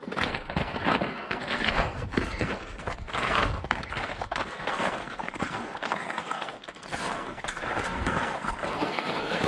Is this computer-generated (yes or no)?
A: yes